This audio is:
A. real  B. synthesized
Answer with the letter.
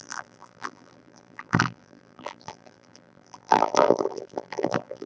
B